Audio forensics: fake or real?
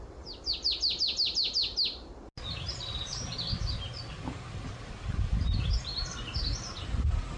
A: real